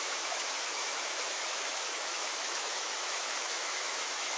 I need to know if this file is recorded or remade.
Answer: remade